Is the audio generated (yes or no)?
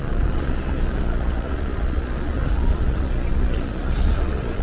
yes